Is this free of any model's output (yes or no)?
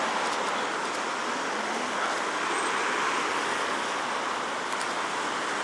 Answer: yes